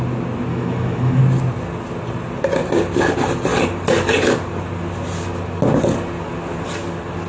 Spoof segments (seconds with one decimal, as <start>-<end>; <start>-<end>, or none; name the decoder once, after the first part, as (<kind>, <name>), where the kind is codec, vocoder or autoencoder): 0.5-1.2 (autoencoder, DAC-VAE)